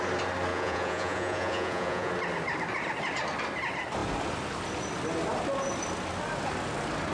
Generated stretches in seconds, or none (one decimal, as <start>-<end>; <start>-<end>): 0.5-2.1